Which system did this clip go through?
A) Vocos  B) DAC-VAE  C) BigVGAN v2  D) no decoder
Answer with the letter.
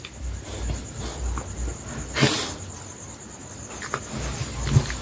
D